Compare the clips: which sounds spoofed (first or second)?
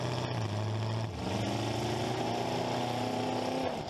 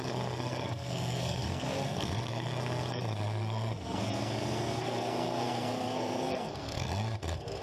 second